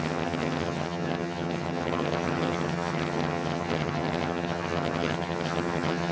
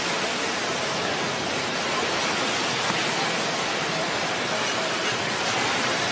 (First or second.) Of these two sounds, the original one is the second